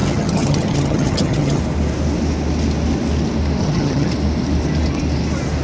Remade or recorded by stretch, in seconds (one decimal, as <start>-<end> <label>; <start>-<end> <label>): 0.0-1.6 remade; 1.6-3.6 recorded; 3.6-4.1 remade; 4.1-5.6 recorded